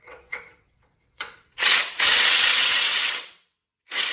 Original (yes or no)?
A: no